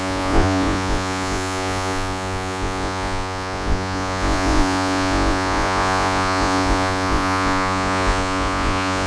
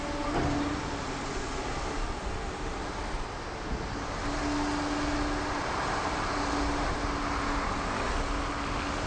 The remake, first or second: first